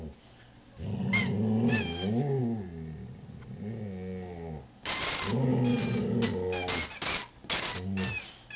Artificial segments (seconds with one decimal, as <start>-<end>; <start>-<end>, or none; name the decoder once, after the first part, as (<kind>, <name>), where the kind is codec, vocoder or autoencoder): none